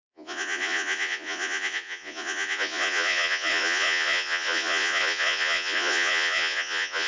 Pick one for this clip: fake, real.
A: fake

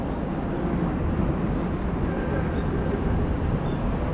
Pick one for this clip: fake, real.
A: real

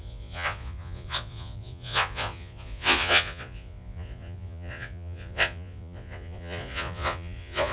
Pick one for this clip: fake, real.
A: fake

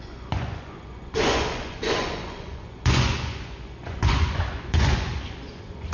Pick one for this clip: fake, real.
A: fake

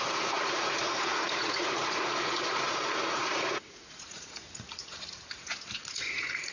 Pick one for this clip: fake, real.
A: fake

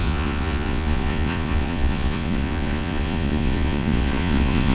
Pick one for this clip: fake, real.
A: fake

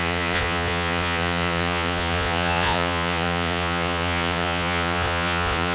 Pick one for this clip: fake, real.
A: fake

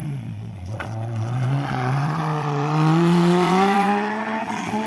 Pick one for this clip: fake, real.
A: fake